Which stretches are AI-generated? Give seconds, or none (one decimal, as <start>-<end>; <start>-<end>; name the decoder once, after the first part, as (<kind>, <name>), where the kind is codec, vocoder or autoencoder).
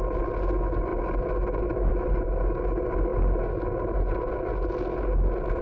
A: none